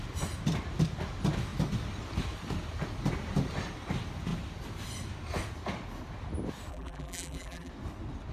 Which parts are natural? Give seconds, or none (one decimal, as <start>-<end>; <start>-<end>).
0.0-6.7; 7.7-8.3